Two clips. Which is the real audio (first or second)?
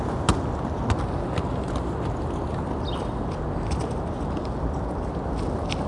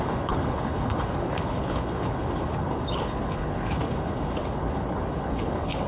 first